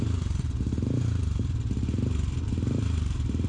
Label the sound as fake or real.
fake